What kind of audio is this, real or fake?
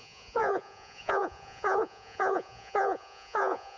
fake